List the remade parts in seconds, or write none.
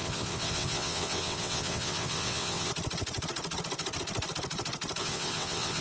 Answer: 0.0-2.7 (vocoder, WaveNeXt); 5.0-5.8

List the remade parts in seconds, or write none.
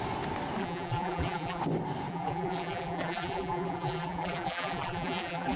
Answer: 0.6-1.6 (vocoder, BigVGAN v2); 2.1-5.6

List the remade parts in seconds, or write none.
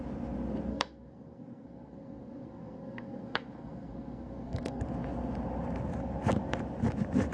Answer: 0.7-4.8 (codec, SNAC)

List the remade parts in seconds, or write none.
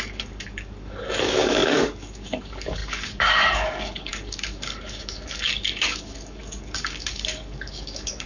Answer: 0.0-8.3 (codec, DAC)